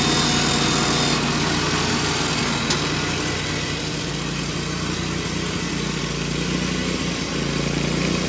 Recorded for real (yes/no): yes